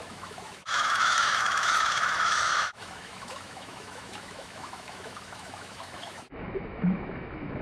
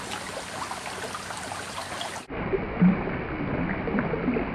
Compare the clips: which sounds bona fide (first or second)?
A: second